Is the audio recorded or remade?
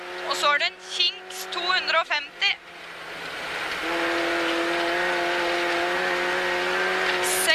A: recorded